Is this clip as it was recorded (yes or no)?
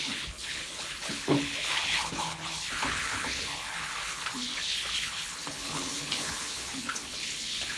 no